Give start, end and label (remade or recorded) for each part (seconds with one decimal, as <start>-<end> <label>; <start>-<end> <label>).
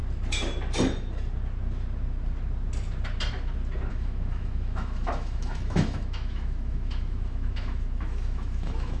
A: 0.0-3.9 recorded; 3.9-9.0 remade